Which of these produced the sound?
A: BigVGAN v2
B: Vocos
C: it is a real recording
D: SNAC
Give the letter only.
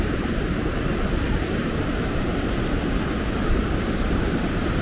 A